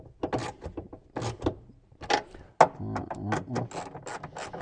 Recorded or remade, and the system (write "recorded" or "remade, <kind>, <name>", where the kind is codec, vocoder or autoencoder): recorded